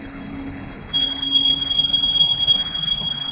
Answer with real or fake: fake